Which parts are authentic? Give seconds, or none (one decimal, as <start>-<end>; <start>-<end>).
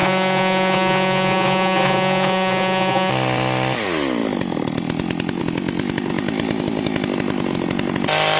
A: 3.1-8.4